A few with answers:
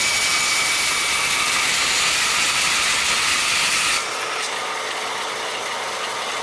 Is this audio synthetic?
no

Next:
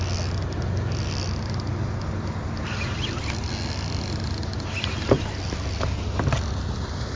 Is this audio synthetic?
no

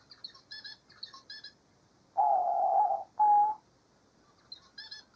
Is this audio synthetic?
no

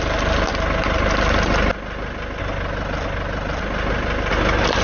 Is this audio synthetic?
no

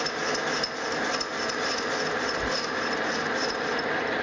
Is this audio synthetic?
no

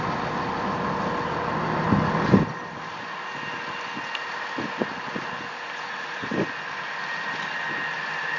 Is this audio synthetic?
no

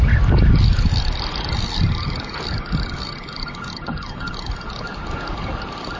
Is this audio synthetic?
no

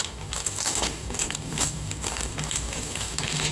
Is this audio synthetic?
yes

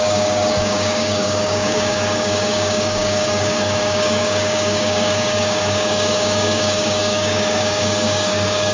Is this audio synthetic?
yes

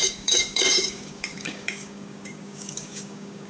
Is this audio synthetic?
yes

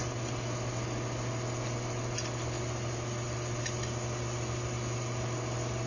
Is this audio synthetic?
no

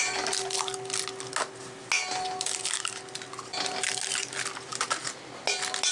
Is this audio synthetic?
no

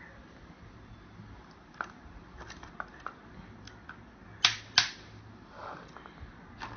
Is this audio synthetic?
no